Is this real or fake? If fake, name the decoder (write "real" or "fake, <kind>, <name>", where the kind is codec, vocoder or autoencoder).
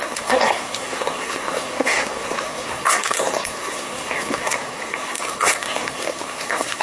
fake, codec, SNAC